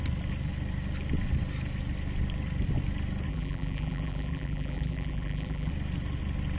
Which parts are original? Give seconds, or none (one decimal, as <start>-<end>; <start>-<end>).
0.0-3.3; 5.7-6.6